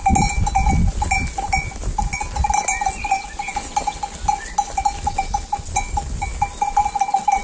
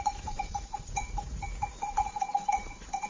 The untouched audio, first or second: first